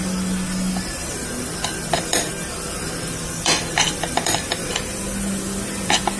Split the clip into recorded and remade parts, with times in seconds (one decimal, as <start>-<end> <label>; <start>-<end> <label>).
0.0-1.0 recorded; 1.0-4.7 remade; 4.7-6.2 recorded

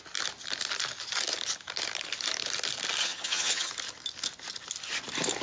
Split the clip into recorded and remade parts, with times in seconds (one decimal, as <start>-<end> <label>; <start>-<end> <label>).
0.0-3.0 recorded; 3.0-3.7 remade; 3.7-5.4 recorded

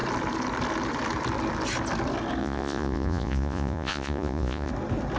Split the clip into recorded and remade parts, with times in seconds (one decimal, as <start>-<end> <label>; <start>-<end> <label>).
0.0-2.4 recorded; 2.4-4.7 remade; 4.7-5.2 recorded

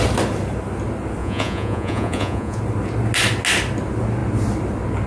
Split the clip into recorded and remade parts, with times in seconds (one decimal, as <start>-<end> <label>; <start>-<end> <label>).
0.0-1.2 recorded; 1.2-2.6 remade; 2.6-5.1 recorded

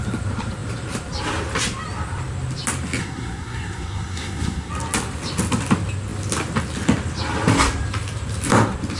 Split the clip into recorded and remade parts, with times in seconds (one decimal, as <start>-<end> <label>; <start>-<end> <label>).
0.0-3.0 recorded; 3.0-4.7 remade; 4.7-9.0 recorded

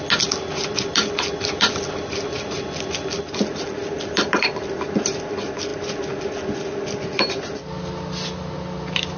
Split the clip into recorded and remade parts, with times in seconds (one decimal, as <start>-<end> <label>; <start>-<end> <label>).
0.0-9.2 recorded

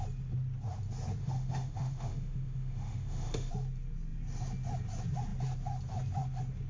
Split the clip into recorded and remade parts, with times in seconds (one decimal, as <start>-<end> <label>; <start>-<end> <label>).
0.0-1.2 recorded; 1.2-3.5 remade; 3.5-6.7 recorded

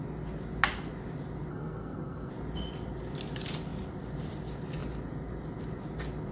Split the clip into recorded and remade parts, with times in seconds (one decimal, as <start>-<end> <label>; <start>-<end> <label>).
0.0-1.5 recorded; 1.5-2.3 remade; 2.3-6.3 recorded